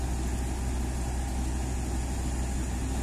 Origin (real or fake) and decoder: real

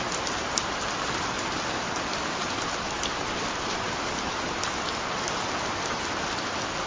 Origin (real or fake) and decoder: real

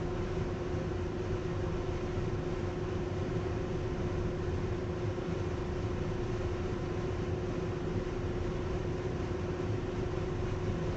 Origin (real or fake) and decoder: real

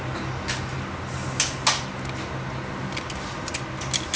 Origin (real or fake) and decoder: real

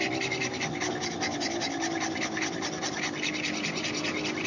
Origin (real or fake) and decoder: fake, vocoder, BigVGAN v2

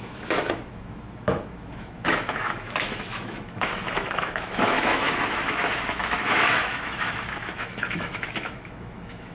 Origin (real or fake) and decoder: fake, autoencoder, DAC-VAE